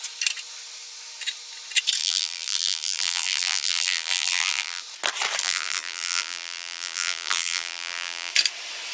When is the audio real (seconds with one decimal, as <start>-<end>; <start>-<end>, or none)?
0.0-2.0; 4.8-5.4; 8.3-8.9